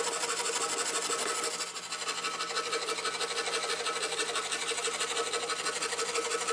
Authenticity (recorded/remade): recorded